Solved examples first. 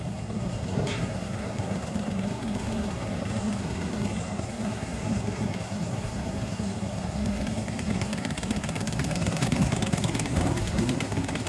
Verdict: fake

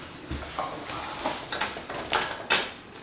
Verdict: real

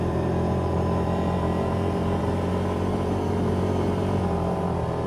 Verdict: fake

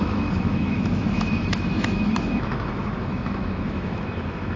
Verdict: fake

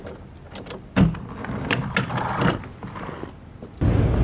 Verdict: real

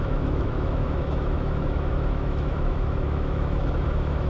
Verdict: fake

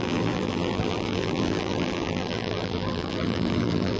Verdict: fake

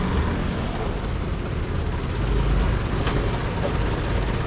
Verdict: real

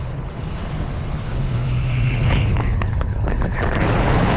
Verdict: fake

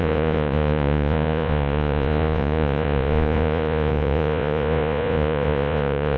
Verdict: fake